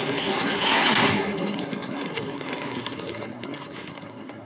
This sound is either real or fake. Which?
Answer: fake